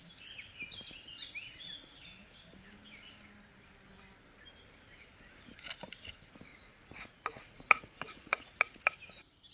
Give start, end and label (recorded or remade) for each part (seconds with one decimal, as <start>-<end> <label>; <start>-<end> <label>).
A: 0.0-6.5 recorded; 6.5-8.8 remade; 8.8-9.5 recorded